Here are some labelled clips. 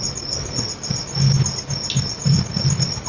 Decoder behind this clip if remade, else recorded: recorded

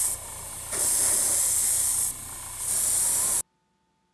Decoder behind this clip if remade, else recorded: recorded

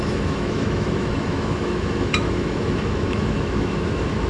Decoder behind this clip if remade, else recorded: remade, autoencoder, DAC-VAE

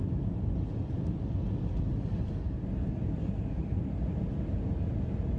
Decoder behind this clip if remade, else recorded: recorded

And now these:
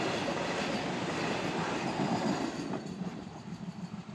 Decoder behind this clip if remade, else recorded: recorded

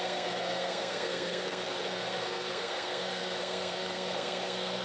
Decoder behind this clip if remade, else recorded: remade, codec, SNAC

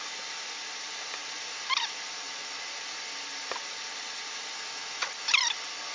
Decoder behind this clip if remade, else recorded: recorded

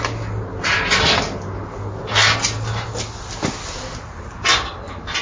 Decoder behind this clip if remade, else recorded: recorded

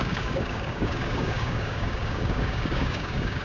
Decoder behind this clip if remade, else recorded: remade, codec, DAC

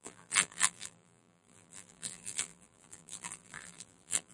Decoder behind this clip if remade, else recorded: remade, vocoder, BigVGAN v2